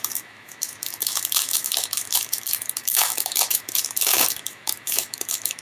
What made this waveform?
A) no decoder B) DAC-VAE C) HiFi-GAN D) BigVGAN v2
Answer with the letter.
B